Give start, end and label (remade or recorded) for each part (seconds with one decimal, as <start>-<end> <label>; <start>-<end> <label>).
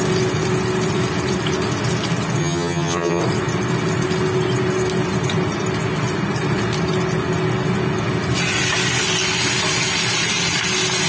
0.0-2.4 recorded; 2.4-3.2 remade; 3.2-11.1 recorded